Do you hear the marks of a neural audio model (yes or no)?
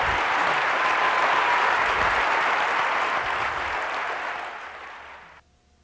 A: no